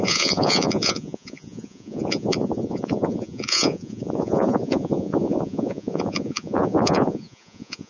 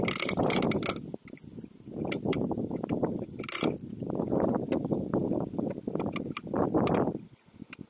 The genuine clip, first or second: second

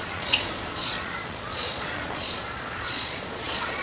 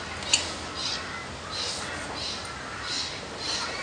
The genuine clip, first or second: second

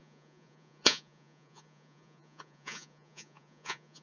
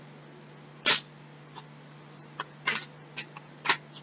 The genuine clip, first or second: second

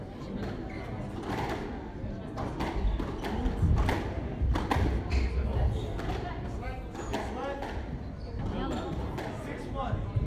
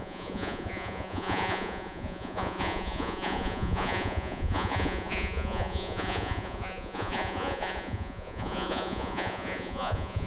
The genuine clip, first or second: first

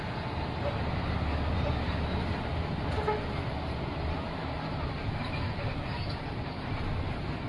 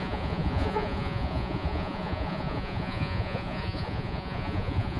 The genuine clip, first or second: first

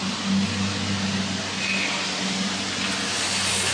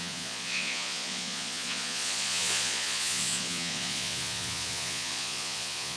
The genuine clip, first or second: first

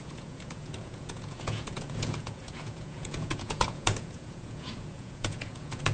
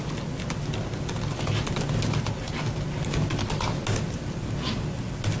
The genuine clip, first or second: second